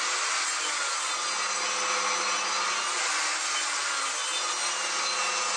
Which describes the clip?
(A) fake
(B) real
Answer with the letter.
B